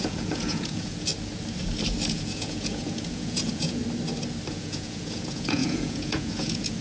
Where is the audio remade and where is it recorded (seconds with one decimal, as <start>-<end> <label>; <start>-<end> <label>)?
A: 0.0-1.1 remade; 1.1-2.1 recorded; 2.1-3.8 remade; 3.8-4.5 recorded; 4.5-6.8 remade